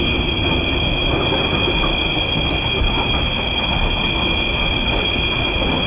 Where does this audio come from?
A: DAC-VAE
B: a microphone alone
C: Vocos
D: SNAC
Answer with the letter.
B